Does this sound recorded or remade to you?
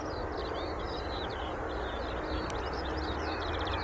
recorded